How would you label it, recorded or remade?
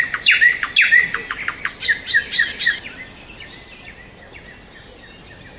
recorded